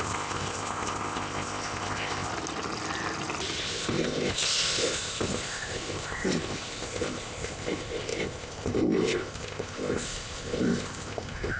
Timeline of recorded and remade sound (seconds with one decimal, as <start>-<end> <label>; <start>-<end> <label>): 0.0-2.3 remade; 2.3-3.6 recorded; 3.6-11.6 remade

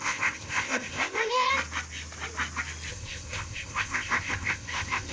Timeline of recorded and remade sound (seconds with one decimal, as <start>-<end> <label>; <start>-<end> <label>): 0.0-1.5 remade; 1.5-2.9 recorded; 2.9-5.1 remade